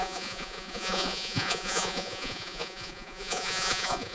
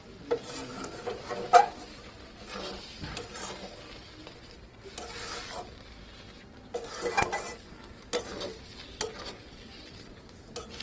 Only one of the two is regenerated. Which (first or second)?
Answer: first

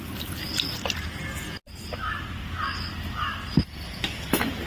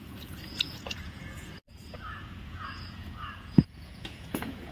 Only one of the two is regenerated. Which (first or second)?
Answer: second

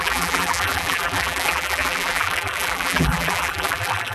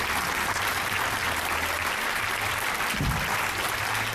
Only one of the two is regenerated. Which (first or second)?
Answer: first